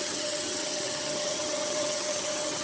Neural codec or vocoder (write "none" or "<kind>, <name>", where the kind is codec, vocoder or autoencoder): vocoder, HiFi-GAN